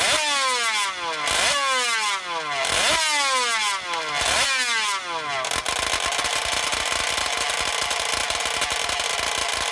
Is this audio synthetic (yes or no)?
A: no